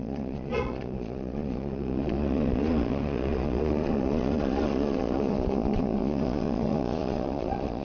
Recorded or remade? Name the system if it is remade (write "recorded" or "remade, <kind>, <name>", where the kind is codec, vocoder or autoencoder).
remade, vocoder, Vocos